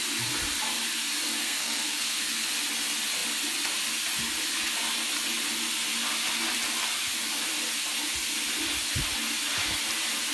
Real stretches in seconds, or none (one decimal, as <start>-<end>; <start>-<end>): 0.0-1.4; 2.2-10.3